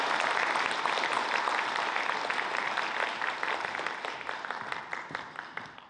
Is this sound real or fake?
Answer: real